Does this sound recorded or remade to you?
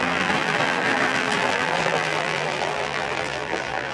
remade